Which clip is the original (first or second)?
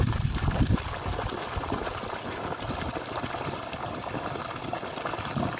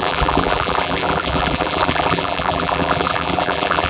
first